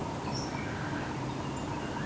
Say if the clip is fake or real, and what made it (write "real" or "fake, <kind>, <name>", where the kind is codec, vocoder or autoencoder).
real